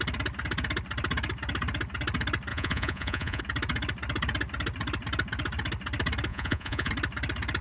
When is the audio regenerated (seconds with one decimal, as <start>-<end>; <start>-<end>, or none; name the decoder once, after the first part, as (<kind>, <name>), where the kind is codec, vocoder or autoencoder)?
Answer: 2.5-3.4 (vocoder, Vocos); 6.3-6.9